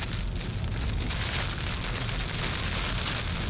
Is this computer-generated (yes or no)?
no